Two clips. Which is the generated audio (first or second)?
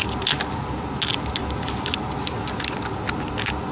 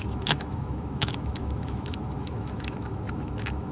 second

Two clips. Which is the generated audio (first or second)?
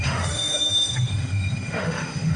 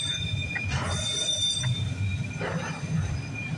first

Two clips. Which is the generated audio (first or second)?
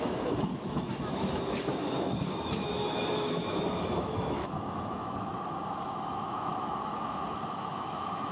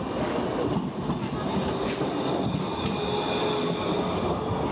first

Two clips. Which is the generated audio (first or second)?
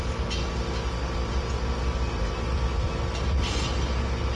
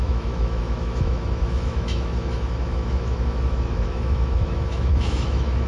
second